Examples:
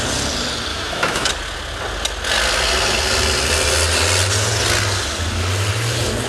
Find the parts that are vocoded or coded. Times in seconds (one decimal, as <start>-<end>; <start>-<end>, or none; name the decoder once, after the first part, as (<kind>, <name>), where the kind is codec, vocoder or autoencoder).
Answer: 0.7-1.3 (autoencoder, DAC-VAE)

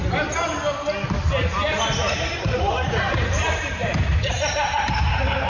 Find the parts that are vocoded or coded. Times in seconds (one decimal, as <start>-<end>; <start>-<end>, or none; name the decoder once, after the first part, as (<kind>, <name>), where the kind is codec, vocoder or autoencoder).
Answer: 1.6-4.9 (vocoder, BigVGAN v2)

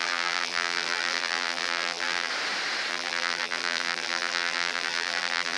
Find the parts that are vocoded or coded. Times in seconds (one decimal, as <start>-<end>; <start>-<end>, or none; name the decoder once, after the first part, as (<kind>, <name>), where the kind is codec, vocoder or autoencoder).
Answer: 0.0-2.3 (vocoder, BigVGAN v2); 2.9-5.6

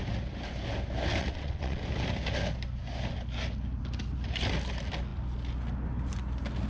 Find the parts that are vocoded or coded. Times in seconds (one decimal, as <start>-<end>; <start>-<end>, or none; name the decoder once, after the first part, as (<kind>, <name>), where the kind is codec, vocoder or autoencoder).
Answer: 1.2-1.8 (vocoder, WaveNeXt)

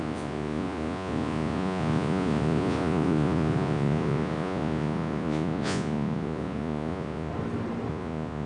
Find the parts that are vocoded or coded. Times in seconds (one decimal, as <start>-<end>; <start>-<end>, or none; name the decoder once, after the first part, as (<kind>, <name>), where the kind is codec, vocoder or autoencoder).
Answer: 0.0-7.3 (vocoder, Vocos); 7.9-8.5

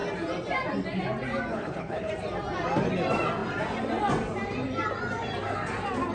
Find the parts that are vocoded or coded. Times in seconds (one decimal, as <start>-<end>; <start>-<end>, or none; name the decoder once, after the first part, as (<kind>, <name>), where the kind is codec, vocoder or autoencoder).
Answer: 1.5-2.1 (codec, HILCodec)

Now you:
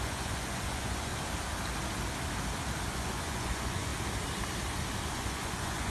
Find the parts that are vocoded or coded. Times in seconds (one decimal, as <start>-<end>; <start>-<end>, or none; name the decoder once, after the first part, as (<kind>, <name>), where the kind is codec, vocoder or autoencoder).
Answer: 0.0-1.1 (vocoder, Vocos); 2.9-3.9; 5.1-5.9

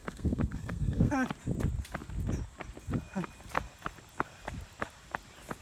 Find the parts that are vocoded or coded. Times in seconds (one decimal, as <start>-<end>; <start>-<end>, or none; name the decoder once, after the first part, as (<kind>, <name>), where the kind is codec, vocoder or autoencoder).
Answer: 0.0-1.1 (codec, SNAC)